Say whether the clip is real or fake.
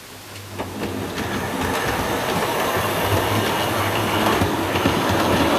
real